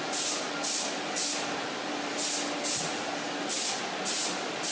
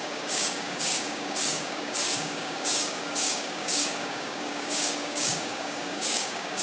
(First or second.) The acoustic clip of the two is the first